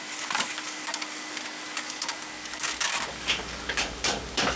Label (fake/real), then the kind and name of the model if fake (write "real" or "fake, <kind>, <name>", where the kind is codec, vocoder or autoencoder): fake, codec, DAC